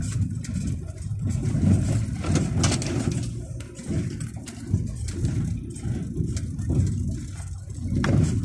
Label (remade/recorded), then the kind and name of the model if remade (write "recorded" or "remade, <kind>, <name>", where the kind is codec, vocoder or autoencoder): recorded